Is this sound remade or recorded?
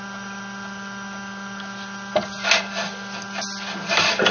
recorded